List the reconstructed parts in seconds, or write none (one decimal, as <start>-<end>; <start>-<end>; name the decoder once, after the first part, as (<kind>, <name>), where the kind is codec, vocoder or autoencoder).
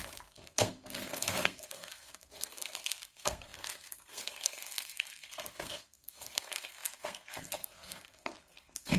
0.0-9.0 (codec, SNAC)